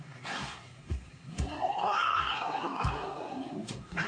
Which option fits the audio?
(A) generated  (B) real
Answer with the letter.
A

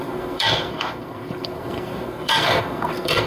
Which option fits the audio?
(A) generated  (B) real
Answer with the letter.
A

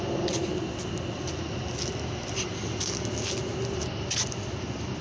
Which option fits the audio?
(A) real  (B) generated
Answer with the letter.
A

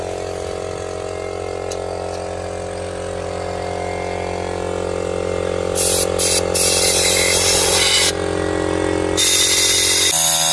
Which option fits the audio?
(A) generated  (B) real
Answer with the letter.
B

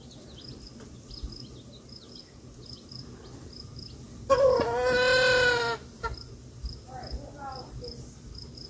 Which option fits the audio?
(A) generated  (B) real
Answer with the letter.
B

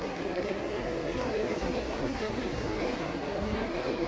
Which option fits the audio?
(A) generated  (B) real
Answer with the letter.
A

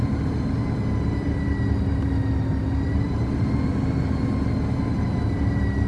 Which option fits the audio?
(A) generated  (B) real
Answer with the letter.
B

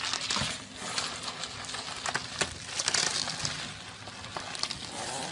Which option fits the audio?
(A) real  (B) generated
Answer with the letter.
A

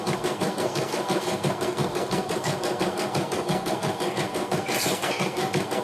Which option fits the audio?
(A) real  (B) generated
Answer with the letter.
B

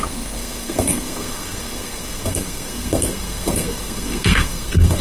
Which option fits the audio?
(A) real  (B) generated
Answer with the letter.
B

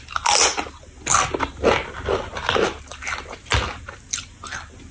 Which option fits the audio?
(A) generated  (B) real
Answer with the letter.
B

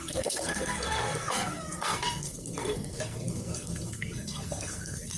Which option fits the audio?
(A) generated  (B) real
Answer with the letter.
A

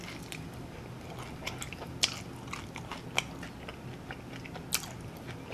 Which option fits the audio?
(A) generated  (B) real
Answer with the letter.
B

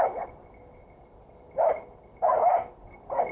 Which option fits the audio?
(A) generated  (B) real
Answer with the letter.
B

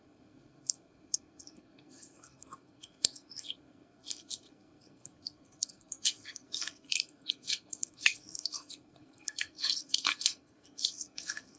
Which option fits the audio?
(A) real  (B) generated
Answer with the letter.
B